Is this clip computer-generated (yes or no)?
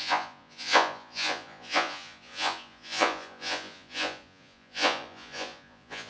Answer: yes